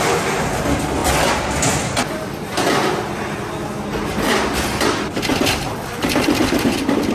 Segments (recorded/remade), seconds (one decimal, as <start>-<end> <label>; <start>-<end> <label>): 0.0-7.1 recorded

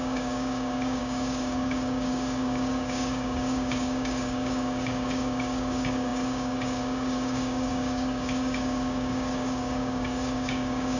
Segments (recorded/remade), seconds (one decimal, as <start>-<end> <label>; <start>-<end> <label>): 0.0-11.0 remade

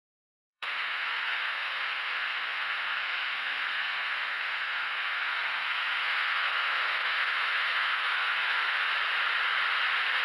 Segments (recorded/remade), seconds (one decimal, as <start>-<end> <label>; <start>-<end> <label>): 0.0-8.9 remade; 8.9-10.2 recorded

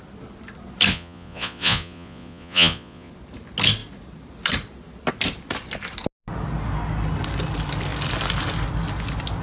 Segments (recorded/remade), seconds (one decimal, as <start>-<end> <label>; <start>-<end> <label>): 0.0-0.9 recorded; 0.9-3.1 remade; 3.1-9.4 recorded

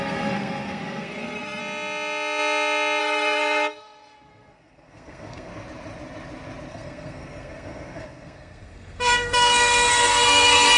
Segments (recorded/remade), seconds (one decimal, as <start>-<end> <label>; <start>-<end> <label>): 0.0-1.6 remade; 1.6-3.0 recorded; 3.0-5.5 remade; 5.5-6.7 recorded; 6.7-10.8 remade

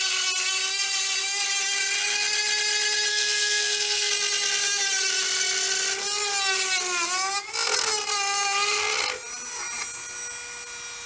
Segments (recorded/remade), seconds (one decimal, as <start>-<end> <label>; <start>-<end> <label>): 0.0-3.1 recorded; 3.1-4.1 remade; 4.1-11.1 recorded